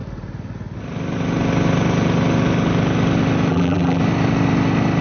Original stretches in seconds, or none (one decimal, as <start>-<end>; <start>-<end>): 0.0-3.5; 4.0-5.0